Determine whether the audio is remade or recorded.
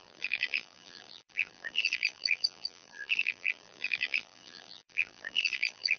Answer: remade